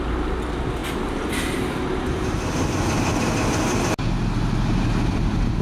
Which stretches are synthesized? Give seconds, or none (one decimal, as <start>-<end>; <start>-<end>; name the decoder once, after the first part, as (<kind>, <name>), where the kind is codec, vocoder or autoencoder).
none